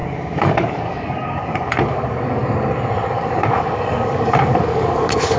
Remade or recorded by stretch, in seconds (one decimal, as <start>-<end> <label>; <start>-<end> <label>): 0.0-2.4 remade; 2.4-3.1 recorded; 3.1-5.4 remade